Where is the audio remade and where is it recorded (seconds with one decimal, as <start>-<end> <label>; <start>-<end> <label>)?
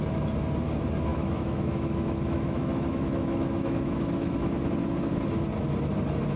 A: 0.0-1.1 recorded; 1.1-4.6 remade; 4.6-6.4 recorded